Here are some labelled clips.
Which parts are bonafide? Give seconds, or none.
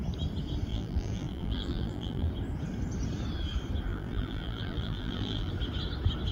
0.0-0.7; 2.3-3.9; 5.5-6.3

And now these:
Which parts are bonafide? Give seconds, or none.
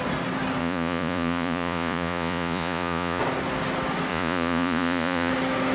0.0-0.6; 3.2-4.1; 5.3-5.7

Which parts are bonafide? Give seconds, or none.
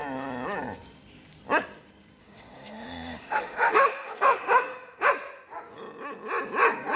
0.0-2.2; 5.1-7.0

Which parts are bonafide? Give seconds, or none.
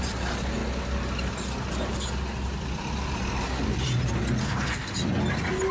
0.0-4.4; 4.9-5.7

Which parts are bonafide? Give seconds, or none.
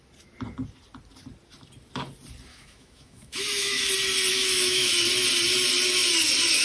0.0-2.5; 3.9-4.3; 4.9-6.6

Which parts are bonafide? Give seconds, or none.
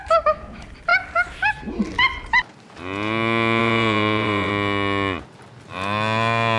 0.0-3.6; 4.5-6.6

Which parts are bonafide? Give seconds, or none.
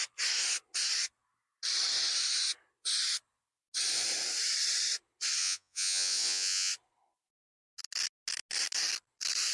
0.0-5.4; 6.7-9.5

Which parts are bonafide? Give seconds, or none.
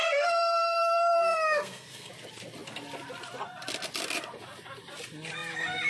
2.1-5.9